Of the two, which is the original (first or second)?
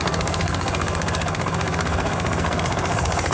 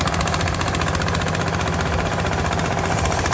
second